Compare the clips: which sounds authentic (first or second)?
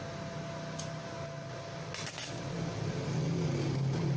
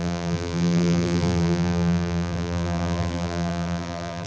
first